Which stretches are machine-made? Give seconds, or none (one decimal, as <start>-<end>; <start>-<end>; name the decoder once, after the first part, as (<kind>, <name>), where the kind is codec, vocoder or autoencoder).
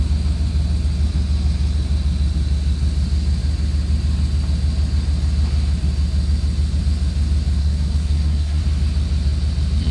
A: 7.6-8.6 (codec, SNAC)